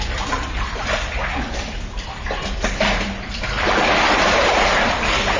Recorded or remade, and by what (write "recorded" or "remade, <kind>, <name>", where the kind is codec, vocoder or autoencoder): remade, vocoder, BigVGAN v2